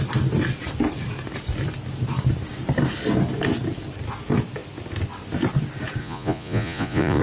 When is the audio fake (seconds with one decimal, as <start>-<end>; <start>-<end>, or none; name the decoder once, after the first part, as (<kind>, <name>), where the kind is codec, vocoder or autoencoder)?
6.0-7.2 (vocoder, Vocos)